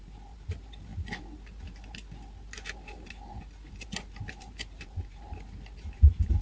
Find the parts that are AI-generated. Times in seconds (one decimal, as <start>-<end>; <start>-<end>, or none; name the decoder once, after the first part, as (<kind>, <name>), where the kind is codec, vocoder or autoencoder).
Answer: 0.0-0.9 (vocoder, BigVGAN v2); 3.7-6.4